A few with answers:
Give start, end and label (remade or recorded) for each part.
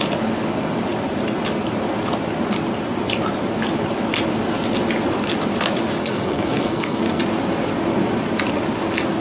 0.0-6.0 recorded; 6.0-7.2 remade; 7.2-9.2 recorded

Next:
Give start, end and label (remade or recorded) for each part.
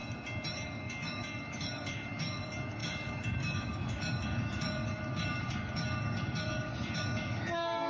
0.0-0.5 recorded; 0.5-7.9 remade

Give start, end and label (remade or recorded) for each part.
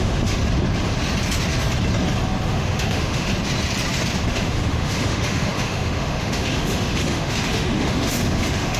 0.0-0.4 remade; 0.4-2.5 recorded; 2.5-3.3 remade; 3.3-4.3 recorded; 4.3-8.8 remade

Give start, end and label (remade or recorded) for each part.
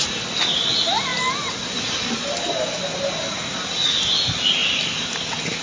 0.0-1.1 recorded; 1.1-1.9 remade; 1.9-4.6 recorded; 4.6-5.6 remade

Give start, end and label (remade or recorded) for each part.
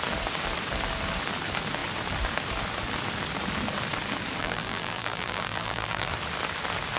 0.0-4.4 recorded; 4.4-6.1 remade; 6.1-7.0 recorded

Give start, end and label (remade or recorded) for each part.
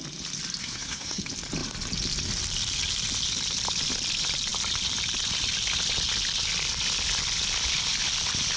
0.0-0.6 recorded; 0.6-1.2 remade; 1.2-8.6 recorded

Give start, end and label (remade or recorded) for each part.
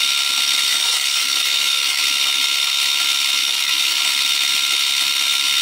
0.0-0.7 recorded; 0.7-2.0 remade; 2.0-3.4 recorded; 3.4-4.0 remade; 4.0-5.6 recorded